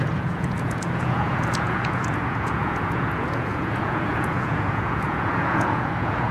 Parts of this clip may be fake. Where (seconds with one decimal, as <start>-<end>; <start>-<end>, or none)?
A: 0.0-6.3